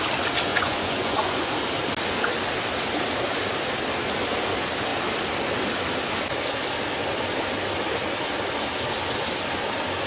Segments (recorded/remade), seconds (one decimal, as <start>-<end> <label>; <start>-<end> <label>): 0.0-0.5 recorded; 0.5-1.5 remade; 1.5-10.1 recorded